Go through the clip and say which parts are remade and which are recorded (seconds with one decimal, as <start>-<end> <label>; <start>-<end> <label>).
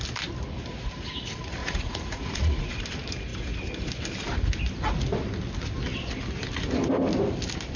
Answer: 0.0-1.6 recorded; 1.6-2.8 remade; 2.8-7.8 recorded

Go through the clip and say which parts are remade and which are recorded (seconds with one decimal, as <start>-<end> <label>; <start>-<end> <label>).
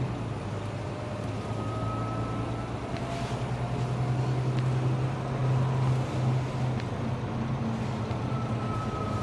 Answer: 0.0-9.2 recorded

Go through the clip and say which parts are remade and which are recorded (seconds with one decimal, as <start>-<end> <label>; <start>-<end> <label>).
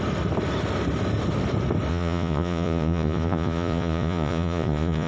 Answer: 0.0-1.9 recorded; 1.9-5.1 remade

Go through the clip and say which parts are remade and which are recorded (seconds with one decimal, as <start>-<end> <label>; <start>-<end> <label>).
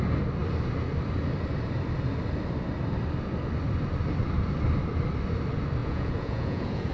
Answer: 0.0-5.8 recorded; 5.8-6.9 remade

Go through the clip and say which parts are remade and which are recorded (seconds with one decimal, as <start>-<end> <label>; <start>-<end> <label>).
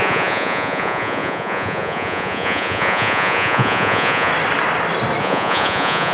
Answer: 0.0-4.3 remade; 4.3-5.2 recorded; 5.2-6.1 remade